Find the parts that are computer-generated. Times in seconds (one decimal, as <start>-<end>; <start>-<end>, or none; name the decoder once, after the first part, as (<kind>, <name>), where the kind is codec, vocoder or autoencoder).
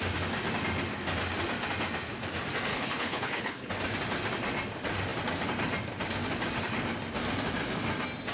2.7-3.7 (codec, HILCodec)